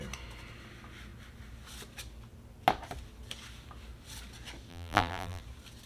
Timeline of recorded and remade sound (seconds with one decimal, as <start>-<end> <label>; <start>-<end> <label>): 0.0-4.7 recorded; 4.7-5.4 remade; 5.4-5.9 recorded